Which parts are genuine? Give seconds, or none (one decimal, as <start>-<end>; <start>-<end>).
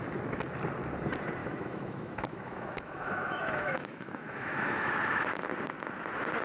0.0-1.4; 4.9-6.4